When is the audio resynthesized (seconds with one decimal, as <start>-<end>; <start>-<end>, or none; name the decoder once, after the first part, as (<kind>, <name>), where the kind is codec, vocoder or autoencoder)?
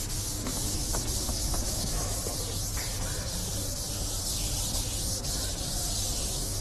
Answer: 0.5-2.2 (autoencoder, DAC-VAE)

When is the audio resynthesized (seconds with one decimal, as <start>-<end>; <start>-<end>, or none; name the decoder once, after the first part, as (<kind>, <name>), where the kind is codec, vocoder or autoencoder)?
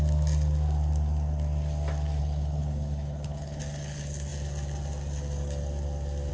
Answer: 2.2-3.6 (codec, HILCodec)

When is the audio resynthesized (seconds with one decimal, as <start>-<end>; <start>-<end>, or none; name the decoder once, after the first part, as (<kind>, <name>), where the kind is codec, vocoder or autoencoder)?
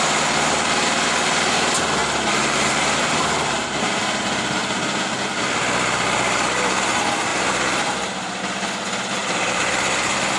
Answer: 2.0-4.0 (vocoder, BigVGAN v2); 7.3-8.4; 9.2-9.7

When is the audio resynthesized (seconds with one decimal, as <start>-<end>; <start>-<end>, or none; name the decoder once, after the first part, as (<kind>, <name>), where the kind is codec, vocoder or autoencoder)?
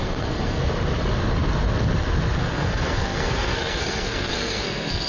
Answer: 0.0-0.6 (codec, SNAC); 2.4-5.1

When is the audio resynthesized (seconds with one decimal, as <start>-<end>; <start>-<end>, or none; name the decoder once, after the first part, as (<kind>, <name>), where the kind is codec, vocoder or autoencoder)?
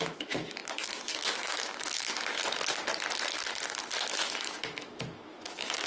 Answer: 0.0-2.4 (autoencoder, DAC-VAE); 4.1-5.9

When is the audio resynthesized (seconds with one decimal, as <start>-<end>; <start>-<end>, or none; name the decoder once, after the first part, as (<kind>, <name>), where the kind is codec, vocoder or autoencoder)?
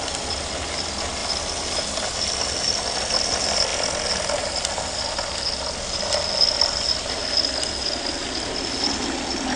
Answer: none